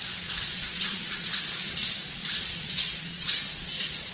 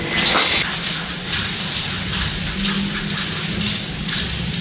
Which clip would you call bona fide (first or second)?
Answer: second